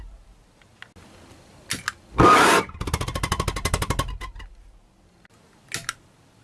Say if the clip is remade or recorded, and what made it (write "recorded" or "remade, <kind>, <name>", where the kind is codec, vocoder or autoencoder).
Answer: recorded